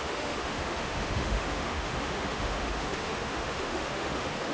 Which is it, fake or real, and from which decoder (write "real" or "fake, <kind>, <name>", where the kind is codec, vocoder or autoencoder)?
fake, autoencoder, DAC-VAE